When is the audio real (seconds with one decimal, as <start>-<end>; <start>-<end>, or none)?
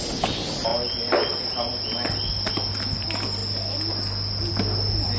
0.0-5.2